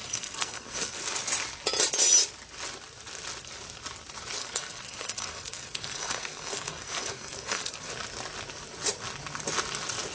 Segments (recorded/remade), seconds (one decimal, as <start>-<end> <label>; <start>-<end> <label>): 0.0-1.0 remade; 1.0-4.4 recorded; 4.4-7.9 remade; 7.9-10.1 recorded